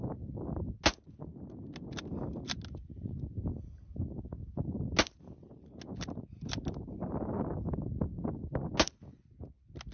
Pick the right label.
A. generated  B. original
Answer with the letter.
B